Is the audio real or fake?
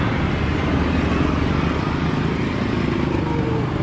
real